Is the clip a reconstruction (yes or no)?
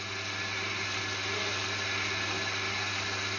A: no